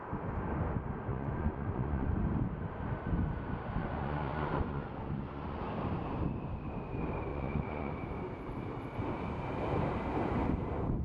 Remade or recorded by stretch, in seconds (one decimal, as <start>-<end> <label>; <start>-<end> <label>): 0.0-1.1 recorded; 1.1-2.1 remade; 2.1-3.8 recorded; 3.8-5.7 remade; 5.7-7.3 recorded; 7.3-7.9 remade; 7.9-11.0 recorded